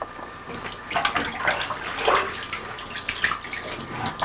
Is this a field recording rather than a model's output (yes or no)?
yes